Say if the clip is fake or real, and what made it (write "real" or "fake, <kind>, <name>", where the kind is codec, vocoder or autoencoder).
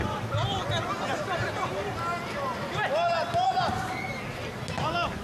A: real